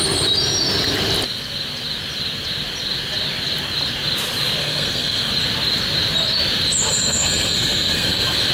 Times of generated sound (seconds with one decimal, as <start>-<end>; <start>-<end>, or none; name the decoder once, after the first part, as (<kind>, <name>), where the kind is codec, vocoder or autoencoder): 4.6-5.3 (codec, SNAC); 6.9-8.5